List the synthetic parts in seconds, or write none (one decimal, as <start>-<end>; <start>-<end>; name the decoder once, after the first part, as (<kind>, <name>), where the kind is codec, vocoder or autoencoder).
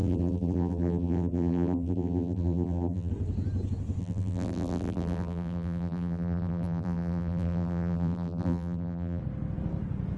0.0-3.1 (vocoder, BigVGAN v2); 4.0-9.2